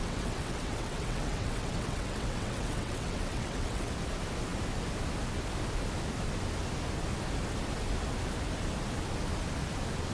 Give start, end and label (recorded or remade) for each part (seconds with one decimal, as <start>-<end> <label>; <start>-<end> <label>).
0.0-3.9 remade; 3.9-10.1 recorded